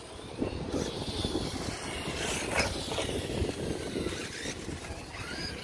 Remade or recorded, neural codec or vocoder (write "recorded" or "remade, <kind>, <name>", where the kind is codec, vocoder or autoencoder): recorded